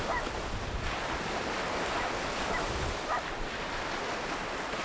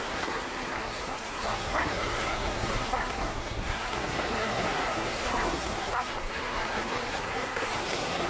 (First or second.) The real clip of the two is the first